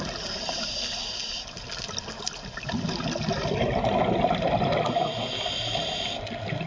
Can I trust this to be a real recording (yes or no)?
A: yes